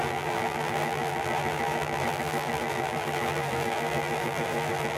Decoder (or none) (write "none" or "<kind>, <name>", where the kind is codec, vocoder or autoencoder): vocoder, BigVGAN v2